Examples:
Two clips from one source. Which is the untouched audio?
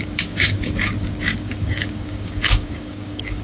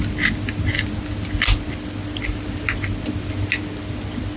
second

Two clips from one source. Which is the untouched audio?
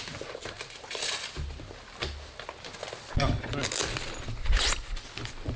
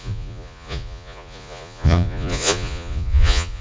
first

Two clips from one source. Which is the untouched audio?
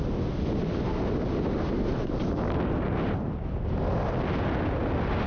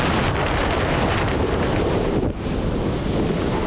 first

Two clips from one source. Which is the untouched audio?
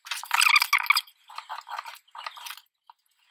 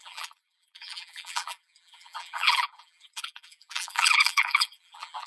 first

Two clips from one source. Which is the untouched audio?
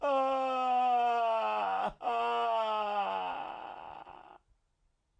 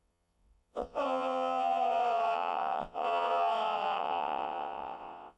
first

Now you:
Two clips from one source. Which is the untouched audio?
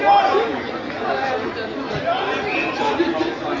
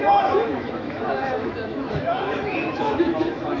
first